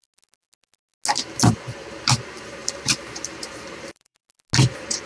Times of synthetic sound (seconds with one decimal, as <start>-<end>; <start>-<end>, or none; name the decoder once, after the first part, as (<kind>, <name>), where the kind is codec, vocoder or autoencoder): 2.6-4.2 (vocoder, BigVGAN v2)